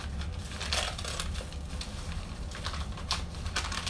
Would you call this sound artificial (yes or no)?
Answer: no